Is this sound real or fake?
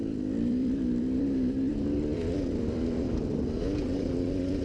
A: fake